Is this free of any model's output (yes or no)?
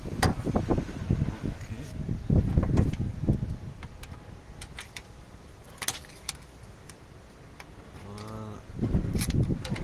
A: yes